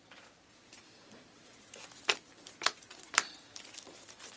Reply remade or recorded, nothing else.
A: recorded